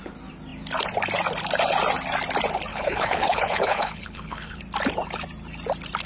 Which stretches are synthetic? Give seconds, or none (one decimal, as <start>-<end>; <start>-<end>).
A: 2.7-4.6